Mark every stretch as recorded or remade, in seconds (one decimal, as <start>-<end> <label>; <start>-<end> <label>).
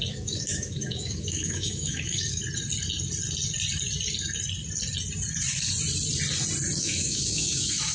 0.0-2.4 remade; 2.4-6.8 recorded; 6.8-7.9 remade